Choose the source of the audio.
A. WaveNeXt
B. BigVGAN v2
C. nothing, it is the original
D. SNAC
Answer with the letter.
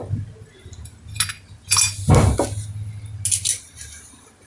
C